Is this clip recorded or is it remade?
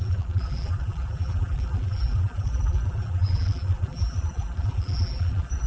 remade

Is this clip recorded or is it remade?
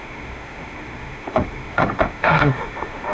remade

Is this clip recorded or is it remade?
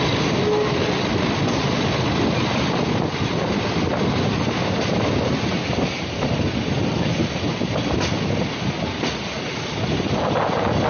recorded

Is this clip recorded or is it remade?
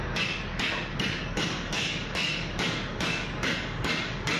remade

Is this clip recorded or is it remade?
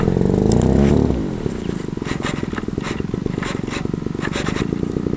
recorded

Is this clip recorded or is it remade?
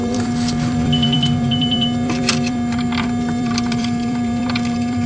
remade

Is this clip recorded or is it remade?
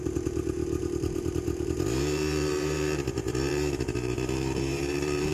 remade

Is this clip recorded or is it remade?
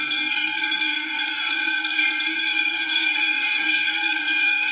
remade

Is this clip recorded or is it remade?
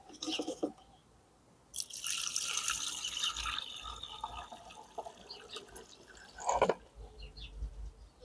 recorded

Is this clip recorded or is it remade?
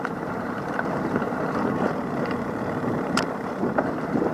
remade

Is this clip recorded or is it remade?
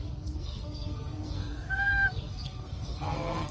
remade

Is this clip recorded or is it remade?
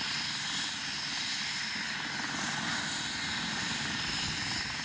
recorded